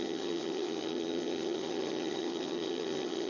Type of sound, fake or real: fake